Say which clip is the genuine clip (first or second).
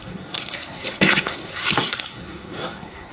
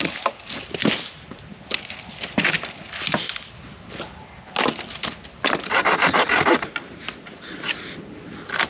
second